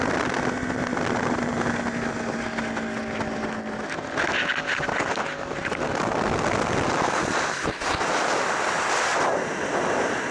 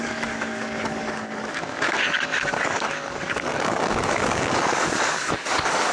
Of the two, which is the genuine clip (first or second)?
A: first